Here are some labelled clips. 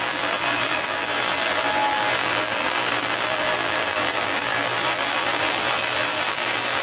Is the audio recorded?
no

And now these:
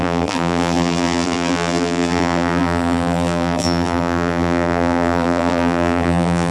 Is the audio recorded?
no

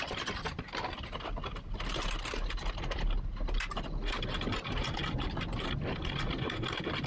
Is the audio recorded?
yes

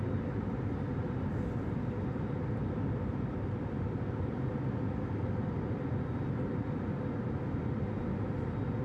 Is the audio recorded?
yes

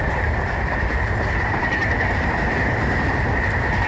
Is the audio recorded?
no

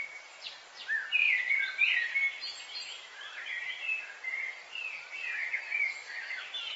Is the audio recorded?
yes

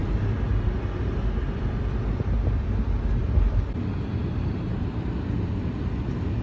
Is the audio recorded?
yes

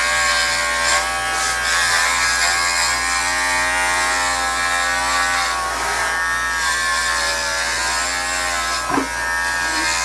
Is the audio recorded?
yes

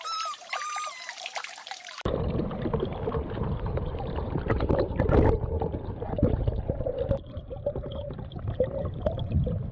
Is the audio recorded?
no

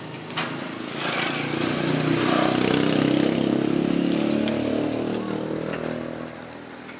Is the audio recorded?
yes